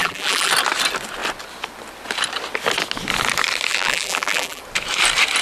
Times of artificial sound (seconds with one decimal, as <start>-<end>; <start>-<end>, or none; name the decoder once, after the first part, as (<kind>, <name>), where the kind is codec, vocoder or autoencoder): 0.0-0.5 (vocoder, BigVGAN v2); 3.7-4.6